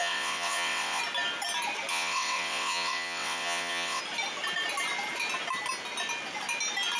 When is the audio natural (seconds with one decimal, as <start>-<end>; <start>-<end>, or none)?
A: 1.0-1.9; 4.0-7.0